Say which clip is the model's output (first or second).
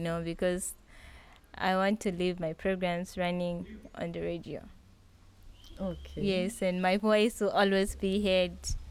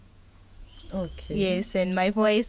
second